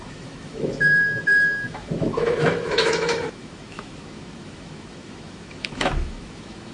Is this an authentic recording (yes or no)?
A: no